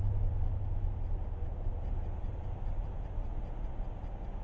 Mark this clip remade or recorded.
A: recorded